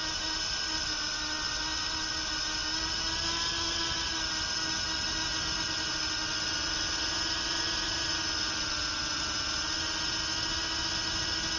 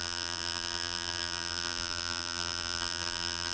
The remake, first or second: second